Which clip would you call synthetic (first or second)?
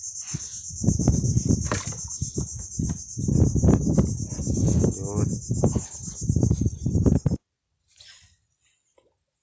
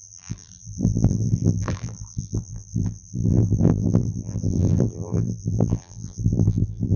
second